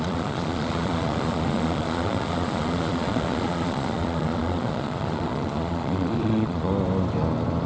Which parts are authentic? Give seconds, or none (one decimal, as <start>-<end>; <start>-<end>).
6.7-7.7